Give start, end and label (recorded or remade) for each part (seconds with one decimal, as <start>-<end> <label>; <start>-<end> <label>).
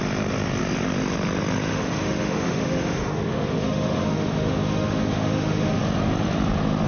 0.0-1.7 recorded; 1.7-5.8 remade; 5.8-6.9 recorded